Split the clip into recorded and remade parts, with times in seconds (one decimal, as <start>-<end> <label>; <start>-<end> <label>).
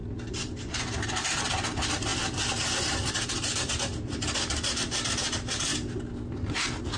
0.0-5.7 remade; 5.7-6.6 recorded; 6.6-7.0 remade